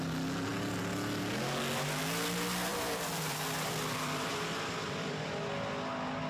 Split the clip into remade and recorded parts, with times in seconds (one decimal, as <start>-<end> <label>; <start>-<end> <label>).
0.0-2.7 recorded; 2.7-5.2 remade; 5.2-6.3 recorded